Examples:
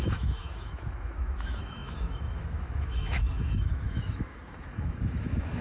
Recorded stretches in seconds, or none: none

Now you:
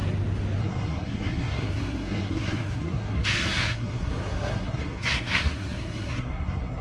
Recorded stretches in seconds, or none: 0.0-0.6

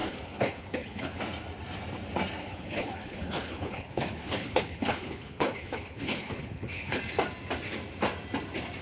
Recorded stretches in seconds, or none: 1.2-2.4; 7.0-8.8

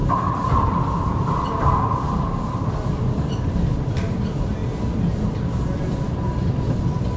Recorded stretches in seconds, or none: 4.6-5.6